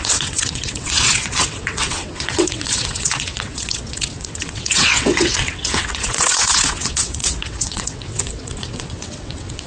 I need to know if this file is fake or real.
fake